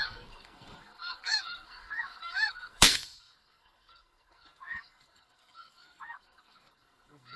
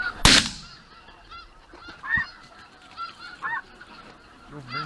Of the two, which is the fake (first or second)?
first